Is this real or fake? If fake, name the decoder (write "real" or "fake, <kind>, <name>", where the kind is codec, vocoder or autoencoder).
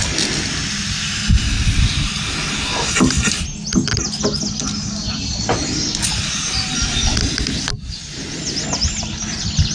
real